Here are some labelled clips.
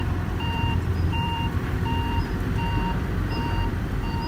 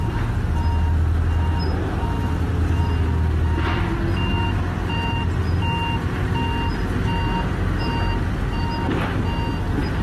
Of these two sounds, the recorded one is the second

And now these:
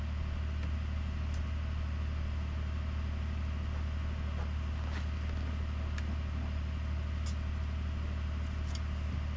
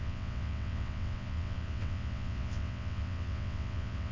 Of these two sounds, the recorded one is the first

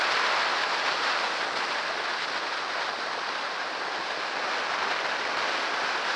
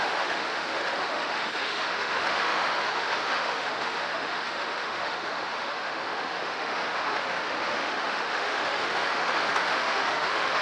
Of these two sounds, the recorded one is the first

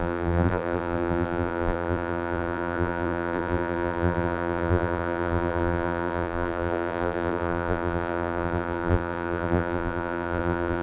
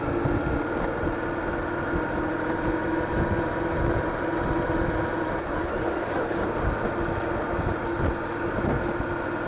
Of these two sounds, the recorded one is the second